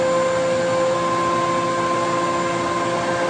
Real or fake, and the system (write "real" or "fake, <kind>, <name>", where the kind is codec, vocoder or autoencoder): real